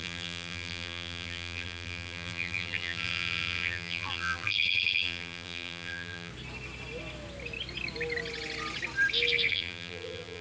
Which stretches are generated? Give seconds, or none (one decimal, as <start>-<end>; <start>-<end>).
0.0-6.3; 9.5-10.4